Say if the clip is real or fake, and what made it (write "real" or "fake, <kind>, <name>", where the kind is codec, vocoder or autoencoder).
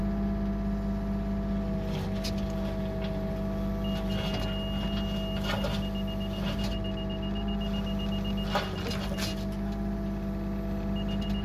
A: real